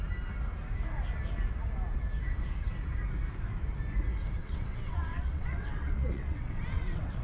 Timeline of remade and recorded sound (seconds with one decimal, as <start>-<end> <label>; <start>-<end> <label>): 0.0-4.4 recorded; 4.4-7.2 remade